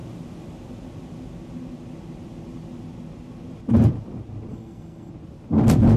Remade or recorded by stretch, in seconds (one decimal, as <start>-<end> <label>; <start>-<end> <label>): 0.0-4.5 recorded; 4.5-5.1 remade; 5.1-6.0 recorded